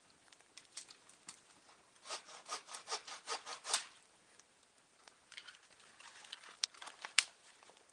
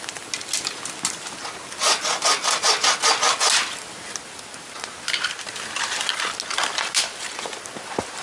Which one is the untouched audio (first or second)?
second